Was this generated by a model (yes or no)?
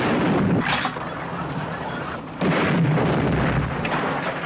no